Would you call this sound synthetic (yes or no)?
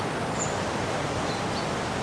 no